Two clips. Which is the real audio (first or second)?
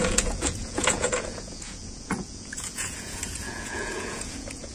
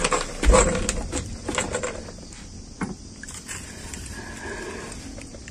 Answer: second